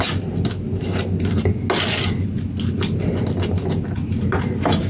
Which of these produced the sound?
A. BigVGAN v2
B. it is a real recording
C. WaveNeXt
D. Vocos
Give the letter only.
B